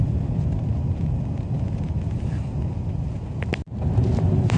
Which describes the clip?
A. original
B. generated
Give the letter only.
A